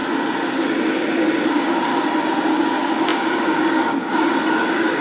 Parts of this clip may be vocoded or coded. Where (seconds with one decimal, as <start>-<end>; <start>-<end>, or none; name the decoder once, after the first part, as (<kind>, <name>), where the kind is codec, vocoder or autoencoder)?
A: 1.5-1.9 (codec, DAC); 2.6-5.0